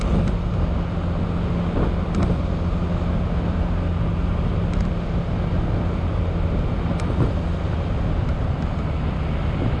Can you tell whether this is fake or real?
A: real